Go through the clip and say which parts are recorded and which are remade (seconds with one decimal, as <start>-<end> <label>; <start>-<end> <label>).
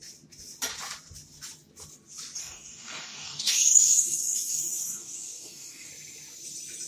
0.0-2.4 recorded; 2.4-5.9 remade; 5.9-6.9 recorded